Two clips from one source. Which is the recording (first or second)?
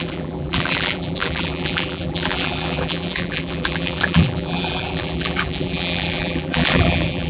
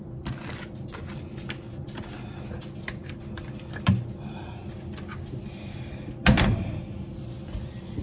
second